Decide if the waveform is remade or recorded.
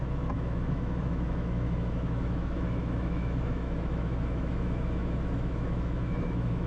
remade